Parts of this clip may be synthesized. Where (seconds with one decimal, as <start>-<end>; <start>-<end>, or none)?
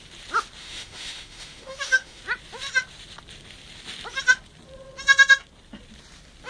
0.6-2.2